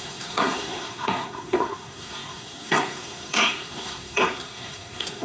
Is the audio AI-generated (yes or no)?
yes